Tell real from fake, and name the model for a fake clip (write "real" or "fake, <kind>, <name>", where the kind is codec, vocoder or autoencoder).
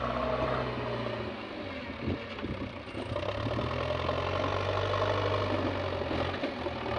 real